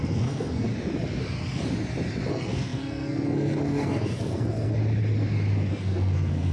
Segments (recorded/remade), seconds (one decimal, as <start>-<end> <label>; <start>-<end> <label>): 0.0-0.7 remade; 0.7-2.3 recorded; 2.3-4.8 remade; 4.8-5.7 recorded; 5.7-6.5 remade